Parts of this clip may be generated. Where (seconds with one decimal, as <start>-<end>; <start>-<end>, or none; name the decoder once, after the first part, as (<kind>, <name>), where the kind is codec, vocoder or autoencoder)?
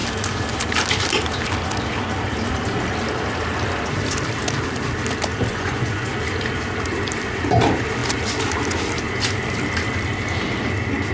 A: 5.5-6.1 (vocoder, Vocos)